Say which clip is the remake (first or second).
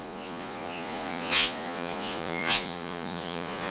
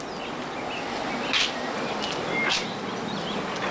first